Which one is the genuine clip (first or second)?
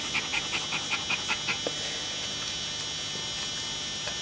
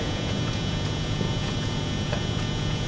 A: first